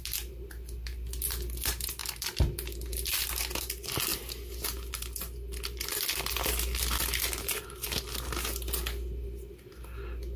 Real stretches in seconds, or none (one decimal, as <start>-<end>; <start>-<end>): 0.0-10.4